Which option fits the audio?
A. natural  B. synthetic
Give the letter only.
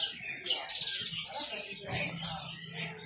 A